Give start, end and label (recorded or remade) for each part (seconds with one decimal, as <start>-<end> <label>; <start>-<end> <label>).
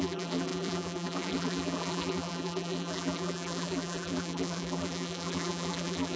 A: 0.0-6.2 remade